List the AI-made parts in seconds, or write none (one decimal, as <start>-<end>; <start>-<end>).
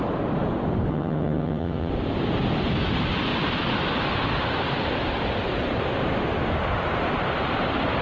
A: 0.9-1.9